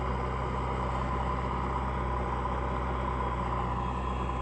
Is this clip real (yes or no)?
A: yes